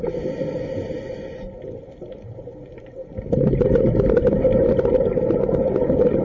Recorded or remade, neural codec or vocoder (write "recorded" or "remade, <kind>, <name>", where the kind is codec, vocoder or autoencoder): recorded